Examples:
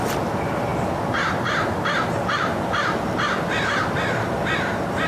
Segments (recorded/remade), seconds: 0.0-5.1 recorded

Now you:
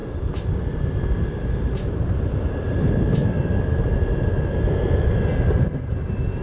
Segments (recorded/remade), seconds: 0.0-2.4 remade; 2.4-6.4 recorded

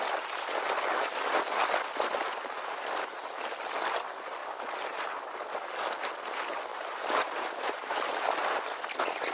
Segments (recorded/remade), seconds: 0.0-6.7 recorded; 6.7-8.0 remade; 8.0-9.3 recorded

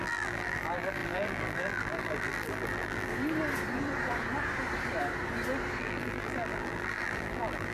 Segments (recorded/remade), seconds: 0.0-3.1 remade; 3.1-5.8 recorded; 5.8-7.7 remade